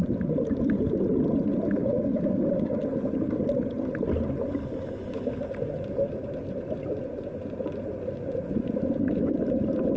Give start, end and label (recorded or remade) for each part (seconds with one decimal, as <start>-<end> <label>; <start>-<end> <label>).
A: 0.0-1.8 recorded; 1.8-2.8 remade; 2.8-10.0 recorded